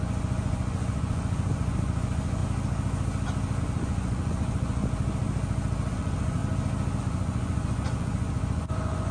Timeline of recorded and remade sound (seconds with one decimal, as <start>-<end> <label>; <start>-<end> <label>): 0.0-2.4 remade; 2.4-3.6 recorded; 3.6-4.8 remade; 4.8-5.9 recorded; 5.9-6.4 remade; 6.4-7.0 recorded; 7.0-9.1 remade